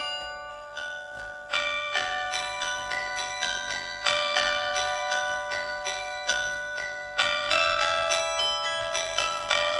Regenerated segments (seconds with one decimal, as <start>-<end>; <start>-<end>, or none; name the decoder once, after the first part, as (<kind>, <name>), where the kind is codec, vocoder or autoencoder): 0.5-8.2 (vocoder, BigVGAN v2); 8.8-9.8